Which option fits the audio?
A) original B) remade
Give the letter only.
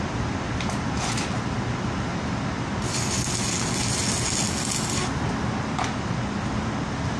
A